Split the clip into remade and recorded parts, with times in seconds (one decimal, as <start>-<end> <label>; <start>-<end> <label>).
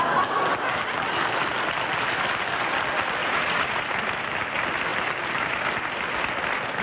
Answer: 0.0-3.2 recorded; 3.2-3.8 remade; 3.8-6.8 recorded